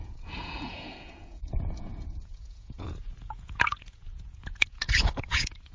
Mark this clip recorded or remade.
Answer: remade